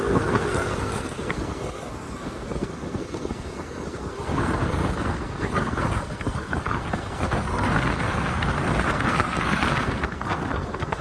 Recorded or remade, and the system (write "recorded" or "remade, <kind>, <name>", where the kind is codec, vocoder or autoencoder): remade, codec, SNAC